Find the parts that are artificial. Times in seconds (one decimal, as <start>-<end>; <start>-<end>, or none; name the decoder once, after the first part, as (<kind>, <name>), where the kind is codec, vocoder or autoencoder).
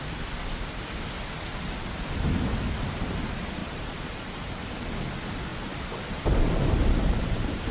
3.6-4.9 (vocoder, BigVGAN v2); 5.5-7.7